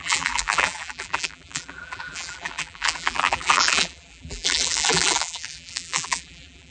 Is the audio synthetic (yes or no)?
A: yes